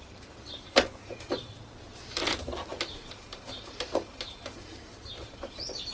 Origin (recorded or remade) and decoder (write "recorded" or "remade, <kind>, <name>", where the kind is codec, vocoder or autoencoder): remade, vocoder, BigVGAN v2